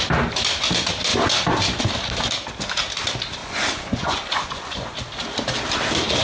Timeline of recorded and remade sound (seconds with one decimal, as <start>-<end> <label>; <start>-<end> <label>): 0.0-3.4 recorded; 3.4-5.0 remade; 5.0-6.2 recorded